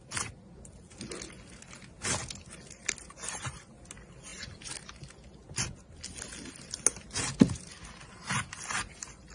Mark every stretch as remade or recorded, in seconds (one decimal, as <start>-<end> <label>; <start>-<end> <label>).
0.0-9.3 recorded